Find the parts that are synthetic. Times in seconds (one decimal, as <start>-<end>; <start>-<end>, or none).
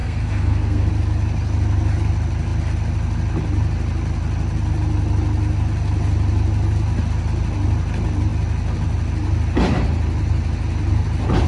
0.0-0.9